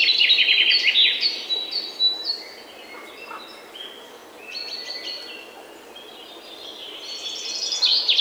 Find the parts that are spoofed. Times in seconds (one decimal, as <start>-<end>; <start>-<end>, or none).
none